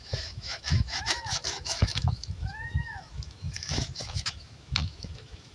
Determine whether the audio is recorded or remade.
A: remade